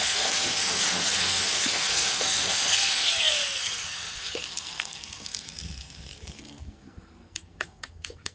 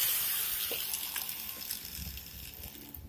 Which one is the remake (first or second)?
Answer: first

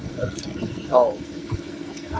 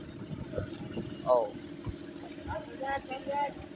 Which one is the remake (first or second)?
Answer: first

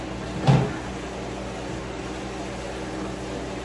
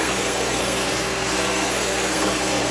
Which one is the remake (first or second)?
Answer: second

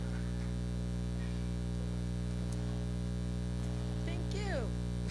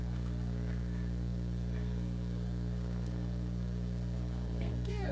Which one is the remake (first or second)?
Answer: second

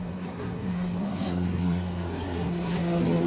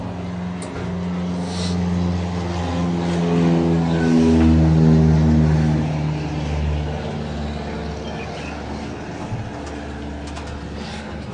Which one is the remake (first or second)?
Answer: first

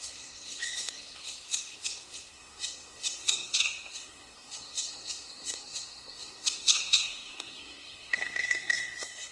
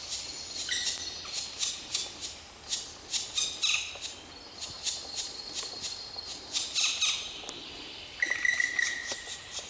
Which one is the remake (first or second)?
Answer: first